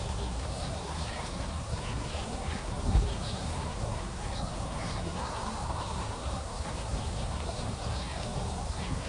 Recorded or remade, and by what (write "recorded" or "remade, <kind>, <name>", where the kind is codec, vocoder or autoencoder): remade, codec, SNAC